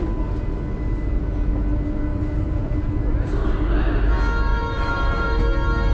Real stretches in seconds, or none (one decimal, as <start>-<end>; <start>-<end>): 0.0-2.1; 2.7-4.5; 5.4-5.9